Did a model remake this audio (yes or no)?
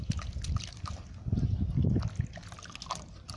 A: no